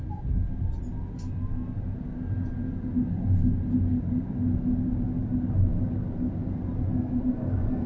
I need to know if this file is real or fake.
real